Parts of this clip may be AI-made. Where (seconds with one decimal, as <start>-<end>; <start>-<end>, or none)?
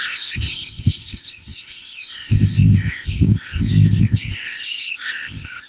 0.0-5.7